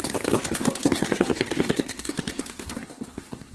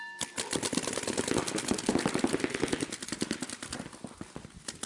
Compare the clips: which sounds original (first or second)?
second